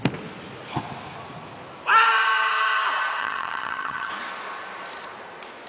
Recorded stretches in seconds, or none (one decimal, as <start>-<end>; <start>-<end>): 0.0-3.2; 4.1-5.7